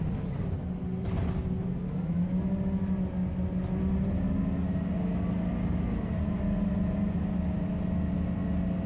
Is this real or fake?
real